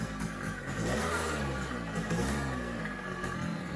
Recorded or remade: remade